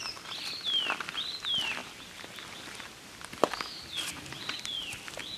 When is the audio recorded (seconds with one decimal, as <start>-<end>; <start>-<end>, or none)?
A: 0.0-5.4